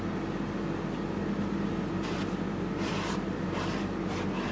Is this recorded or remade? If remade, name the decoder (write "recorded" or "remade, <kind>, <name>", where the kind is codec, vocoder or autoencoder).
recorded